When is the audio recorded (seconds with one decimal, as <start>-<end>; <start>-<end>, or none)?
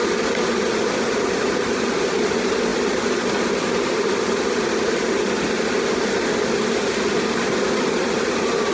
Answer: 0.0-8.7